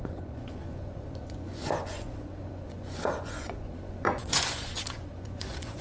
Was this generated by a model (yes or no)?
yes